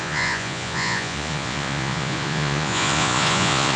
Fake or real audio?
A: fake